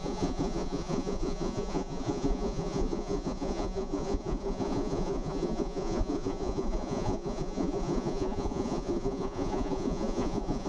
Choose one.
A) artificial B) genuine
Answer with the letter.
A